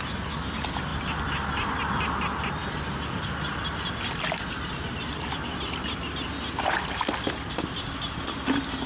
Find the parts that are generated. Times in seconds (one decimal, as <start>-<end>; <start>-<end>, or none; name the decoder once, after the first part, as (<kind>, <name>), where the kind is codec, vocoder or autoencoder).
none